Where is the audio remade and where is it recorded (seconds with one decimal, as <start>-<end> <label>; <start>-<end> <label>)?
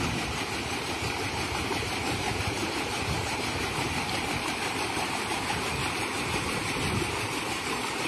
0.0-8.1 remade